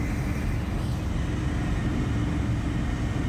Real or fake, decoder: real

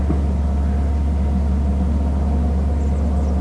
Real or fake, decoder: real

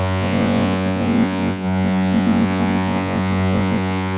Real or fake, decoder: fake, vocoder, Vocos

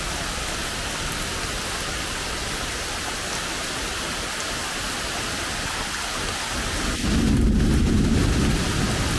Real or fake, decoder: real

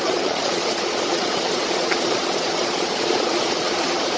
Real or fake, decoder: fake, vocoder, Vocos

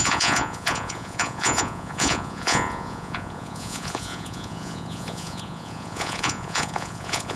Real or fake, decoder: fake, vocoder, Vocos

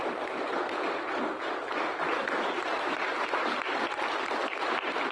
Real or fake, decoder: real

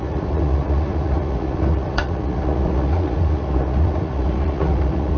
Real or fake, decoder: fake, vocoder, Vocos